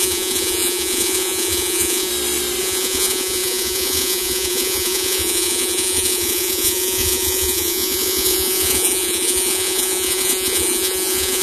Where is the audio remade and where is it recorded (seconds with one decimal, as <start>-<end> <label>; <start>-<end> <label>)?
0.0-2.1 remade; 2.1-2.6 recorded; 2.6-11.4 remade